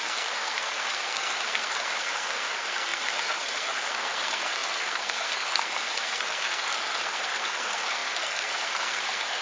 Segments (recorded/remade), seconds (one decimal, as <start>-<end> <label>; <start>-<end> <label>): 0.0-9.4 remade